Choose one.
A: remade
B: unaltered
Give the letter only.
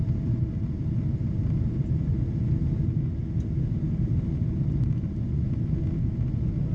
B